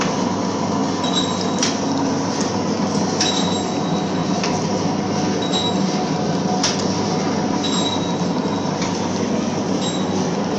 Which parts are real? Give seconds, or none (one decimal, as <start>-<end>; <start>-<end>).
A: 0.0-4.2; 5.0-10.6